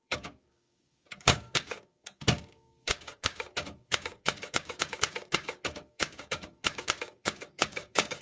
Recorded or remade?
remade